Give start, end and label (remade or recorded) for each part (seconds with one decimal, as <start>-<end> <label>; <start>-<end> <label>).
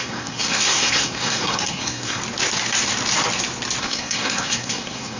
0.0-2.2 remade; 2.2-3.8 recorded; 3.8-5.2 remade